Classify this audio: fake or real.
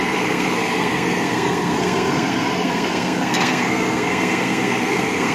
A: fake